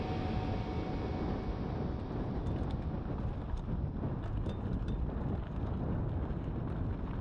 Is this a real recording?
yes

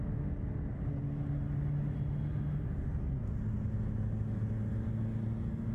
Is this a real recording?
yes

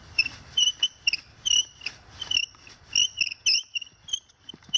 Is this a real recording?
yes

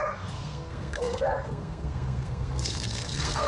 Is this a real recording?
no